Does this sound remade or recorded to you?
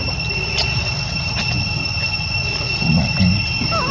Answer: recorded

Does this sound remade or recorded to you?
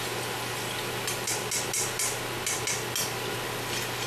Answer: recorded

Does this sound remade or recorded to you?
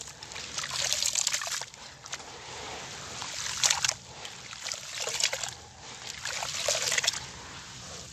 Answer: recorded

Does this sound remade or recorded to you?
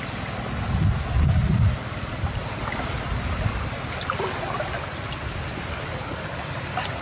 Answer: recorded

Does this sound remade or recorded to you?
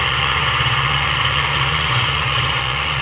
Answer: remade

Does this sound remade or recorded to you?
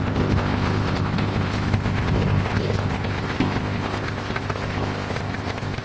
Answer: remade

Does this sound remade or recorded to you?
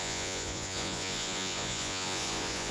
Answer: remade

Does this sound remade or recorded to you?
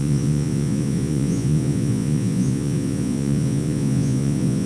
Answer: remade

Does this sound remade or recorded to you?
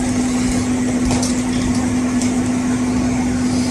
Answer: recorded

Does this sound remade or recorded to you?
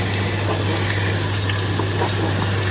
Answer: recorded